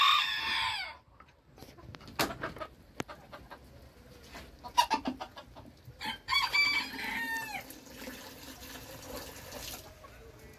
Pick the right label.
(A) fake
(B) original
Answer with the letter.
B